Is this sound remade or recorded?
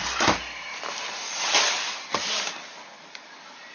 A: remade